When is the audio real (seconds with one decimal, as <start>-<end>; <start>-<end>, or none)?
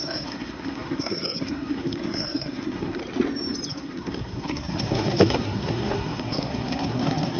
3.0-3.7